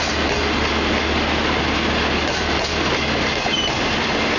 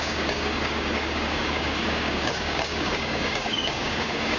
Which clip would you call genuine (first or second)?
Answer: first